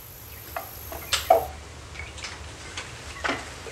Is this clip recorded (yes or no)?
yes